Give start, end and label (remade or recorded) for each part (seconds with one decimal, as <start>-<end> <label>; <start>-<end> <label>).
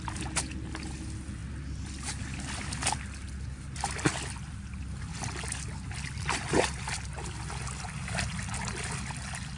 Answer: 0.0-9.6 recorded